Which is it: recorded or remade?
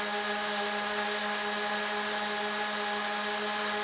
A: recorded